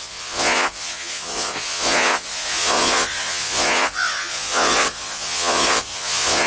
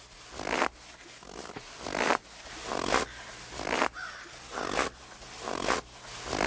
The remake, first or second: first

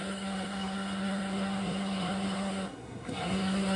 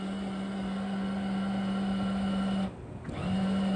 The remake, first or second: first